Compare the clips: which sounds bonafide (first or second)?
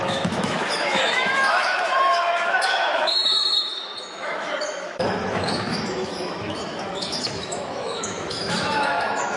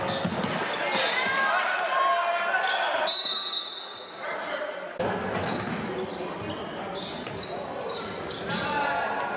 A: second